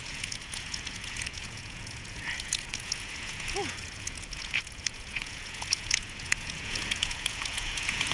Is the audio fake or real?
fake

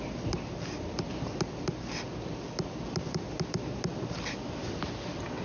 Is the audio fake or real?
real